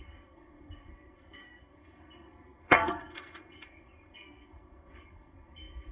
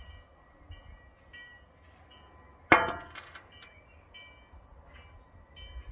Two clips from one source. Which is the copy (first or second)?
first